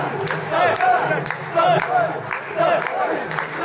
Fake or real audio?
real